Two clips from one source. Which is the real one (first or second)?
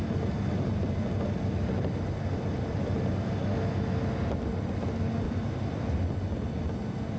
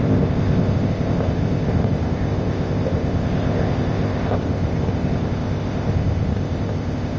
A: first